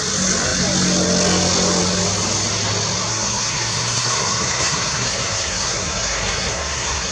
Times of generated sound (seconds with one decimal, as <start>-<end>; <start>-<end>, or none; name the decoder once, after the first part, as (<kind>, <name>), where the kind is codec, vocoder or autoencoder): 3.1-7.1 (codec, SNAC)